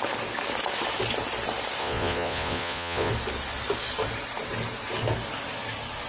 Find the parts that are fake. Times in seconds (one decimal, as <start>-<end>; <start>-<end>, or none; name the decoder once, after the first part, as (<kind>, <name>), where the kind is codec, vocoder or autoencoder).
1.8-3.1 (vocoder, Vocos)